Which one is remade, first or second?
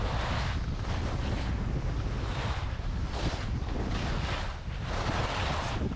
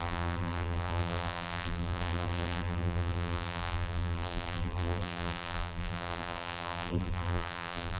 second